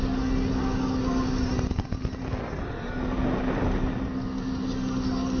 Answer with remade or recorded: recorded